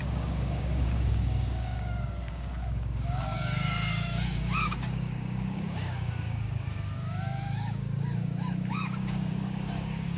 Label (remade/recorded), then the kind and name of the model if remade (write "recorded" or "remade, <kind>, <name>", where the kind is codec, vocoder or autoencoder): remade, codec, DAC